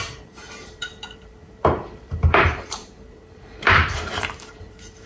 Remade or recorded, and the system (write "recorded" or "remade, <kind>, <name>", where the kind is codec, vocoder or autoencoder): remade, vocoder, BigVGAN v2